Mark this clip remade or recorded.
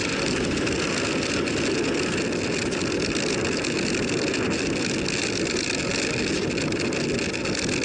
recorded